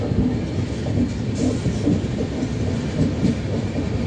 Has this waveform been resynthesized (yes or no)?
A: no